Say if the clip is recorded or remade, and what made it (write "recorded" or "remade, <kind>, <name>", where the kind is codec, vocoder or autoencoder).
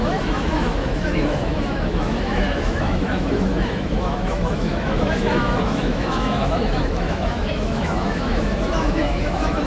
remade, autoencoder, DAC-VAE